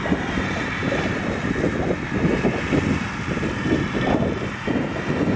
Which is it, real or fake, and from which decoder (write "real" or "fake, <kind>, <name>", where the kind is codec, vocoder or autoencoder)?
real